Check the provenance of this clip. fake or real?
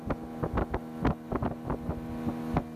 real